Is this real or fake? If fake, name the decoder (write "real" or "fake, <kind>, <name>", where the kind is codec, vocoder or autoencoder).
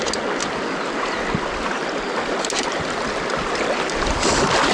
real